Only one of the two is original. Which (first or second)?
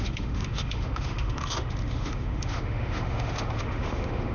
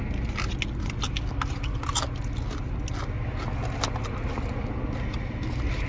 second